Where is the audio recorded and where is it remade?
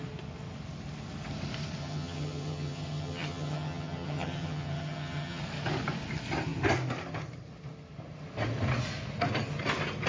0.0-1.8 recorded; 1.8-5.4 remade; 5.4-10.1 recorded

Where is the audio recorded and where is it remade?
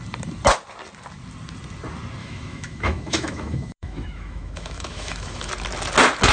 0.0-2.2 recorded; 2.2-5.5 remade; 5.5-6.3 recorded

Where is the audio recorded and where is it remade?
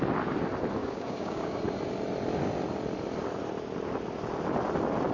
0.0-0.8 recorded; 0.8-1.6 remade; 1.6-5.1 recorded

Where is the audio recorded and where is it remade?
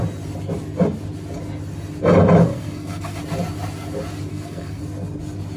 0.0-2.5 recorded; 2.5-3.2 remade; 3.2-4.3 recorded; 4.3-4.8 remade; 4.8-5.6 recorded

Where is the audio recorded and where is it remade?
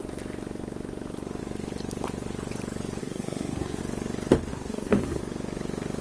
0.0-3.0 recorded; 3.0-3.8 remade; 3.8-4.5 recorded; 4.5-5.2 remade; 5.2-6.0 recorded